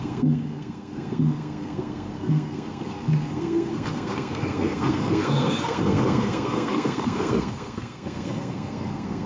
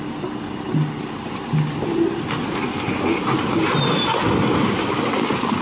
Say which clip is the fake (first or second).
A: first